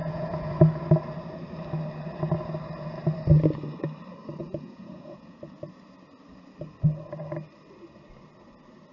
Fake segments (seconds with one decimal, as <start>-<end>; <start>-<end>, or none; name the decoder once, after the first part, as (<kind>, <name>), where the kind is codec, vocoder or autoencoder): 0.0-0.6 (vocoder, Vocos); 4.4-5.4

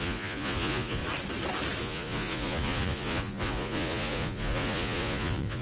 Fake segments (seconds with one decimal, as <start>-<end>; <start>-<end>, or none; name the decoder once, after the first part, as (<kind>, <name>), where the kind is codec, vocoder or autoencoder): 0.0-1.0 (vocoder, Vocos); 1.8-5.6

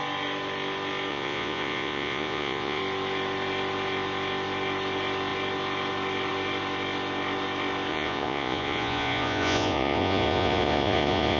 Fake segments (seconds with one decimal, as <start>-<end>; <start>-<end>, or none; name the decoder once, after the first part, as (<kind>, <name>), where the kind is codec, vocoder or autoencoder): 1.1-2.8 (vocoder, Vocos); 7.9-11.4

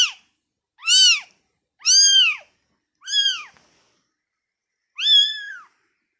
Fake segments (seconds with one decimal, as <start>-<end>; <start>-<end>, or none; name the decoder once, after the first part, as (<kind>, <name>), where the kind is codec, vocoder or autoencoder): none

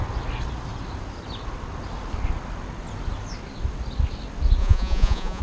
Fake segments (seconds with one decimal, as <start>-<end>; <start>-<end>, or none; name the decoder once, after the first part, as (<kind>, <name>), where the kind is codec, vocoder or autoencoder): 4.6-5.4 (vocoder, Vocos)